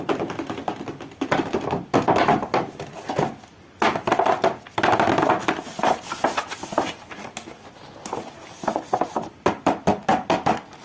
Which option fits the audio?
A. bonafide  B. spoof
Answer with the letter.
A